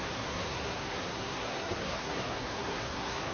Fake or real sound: fake